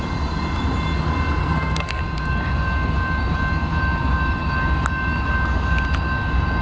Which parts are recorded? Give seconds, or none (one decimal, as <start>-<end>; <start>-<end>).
0.0-1.4; 2.0-6.6